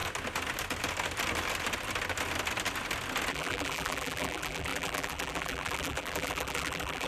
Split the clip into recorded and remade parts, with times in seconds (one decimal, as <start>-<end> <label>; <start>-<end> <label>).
0.0-3.3 recorded; 3.3-7.1 remade